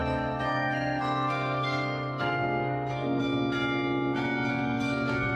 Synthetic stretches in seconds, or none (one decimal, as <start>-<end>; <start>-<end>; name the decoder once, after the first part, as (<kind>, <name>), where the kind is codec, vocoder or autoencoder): 0.0-3.2 (codec, SNAC); 4.5-5.4